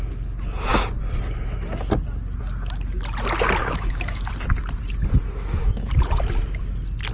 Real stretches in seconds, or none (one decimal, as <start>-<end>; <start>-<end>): 0.0-3.6; 4.3-5.2; 5.9-7.1